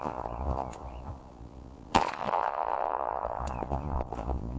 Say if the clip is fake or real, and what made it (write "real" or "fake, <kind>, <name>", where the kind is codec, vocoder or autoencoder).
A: fake, vocoder, Vocos